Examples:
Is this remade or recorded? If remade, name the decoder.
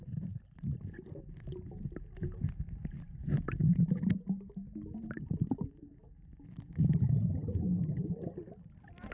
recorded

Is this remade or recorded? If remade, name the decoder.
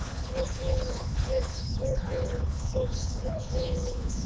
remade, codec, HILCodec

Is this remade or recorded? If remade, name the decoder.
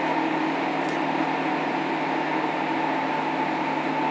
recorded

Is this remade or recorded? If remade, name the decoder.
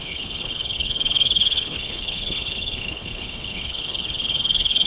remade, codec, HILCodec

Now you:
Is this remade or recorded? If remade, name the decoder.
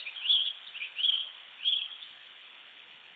remade, codec, HILCodec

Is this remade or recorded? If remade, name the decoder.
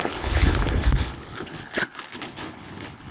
remade, codec, HILCodec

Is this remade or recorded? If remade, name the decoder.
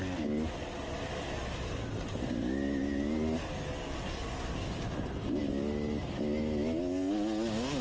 recorded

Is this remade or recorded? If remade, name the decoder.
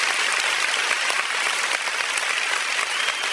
recorded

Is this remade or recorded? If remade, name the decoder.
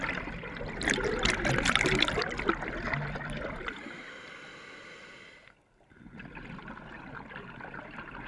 recorded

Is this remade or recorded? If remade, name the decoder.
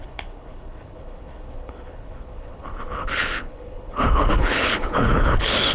remade, codec, HILCodec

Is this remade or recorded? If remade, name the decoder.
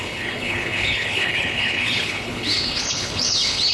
remade, codec, HILCodec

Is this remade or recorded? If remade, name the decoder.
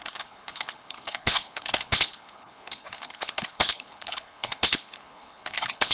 remade, codec, HILCodec